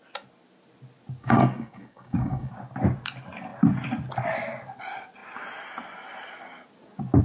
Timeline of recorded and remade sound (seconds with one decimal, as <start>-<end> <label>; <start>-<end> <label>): 0.0-1.2 recorded; 1.2-2.5 remade; 2.5-7.2 recorded